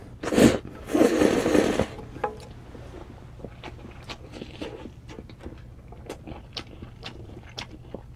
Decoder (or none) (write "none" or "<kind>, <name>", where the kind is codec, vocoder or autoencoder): none